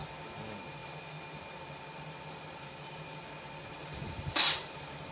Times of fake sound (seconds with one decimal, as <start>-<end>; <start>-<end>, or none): 3.8-5.1